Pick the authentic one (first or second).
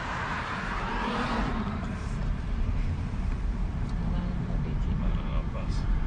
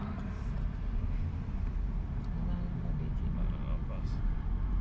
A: second